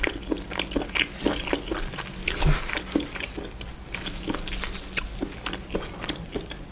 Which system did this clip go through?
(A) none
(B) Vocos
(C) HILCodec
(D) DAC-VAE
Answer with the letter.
A